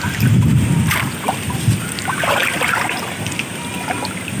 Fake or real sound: real